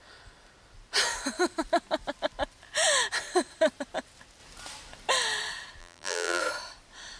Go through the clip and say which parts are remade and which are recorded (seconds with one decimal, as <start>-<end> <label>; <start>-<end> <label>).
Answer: 0.0-5.8 recorded; 5.8-6.4 remade; 6.4-7.2 recorded